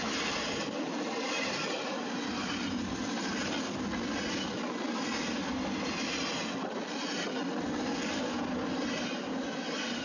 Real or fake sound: real